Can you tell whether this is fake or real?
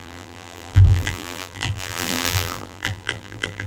fake